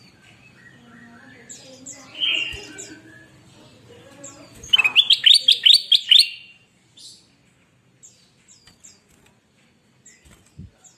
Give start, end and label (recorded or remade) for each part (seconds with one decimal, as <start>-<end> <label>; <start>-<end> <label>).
0.0-3.7 recorded; 3.7-5.1 remade; 5.1-11.0 recorded